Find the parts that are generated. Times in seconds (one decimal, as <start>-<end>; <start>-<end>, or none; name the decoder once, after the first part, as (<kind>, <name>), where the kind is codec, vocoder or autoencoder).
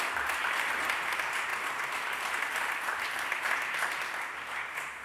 1.5-4.5 (vocoder, BigVGAN v2)